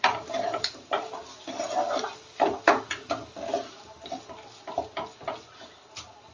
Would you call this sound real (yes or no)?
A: yes